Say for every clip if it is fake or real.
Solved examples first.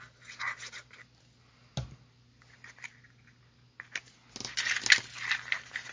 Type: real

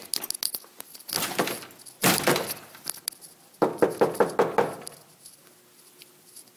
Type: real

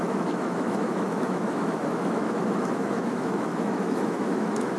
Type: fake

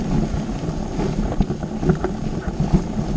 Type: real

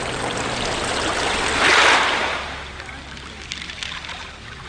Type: real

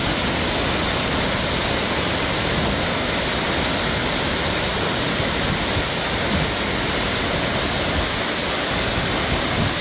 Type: real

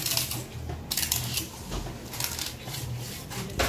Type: real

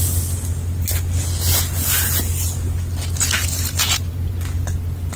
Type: real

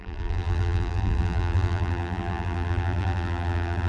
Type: fake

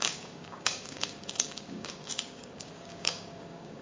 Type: fake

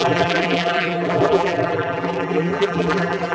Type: fake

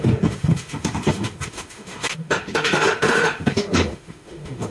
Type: fake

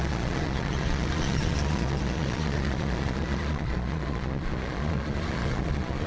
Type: fake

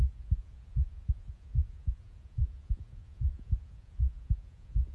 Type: fake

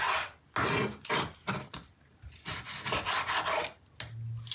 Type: real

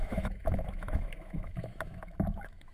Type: fake